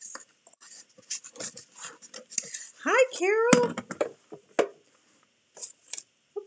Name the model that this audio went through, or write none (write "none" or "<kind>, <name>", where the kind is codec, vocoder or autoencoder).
none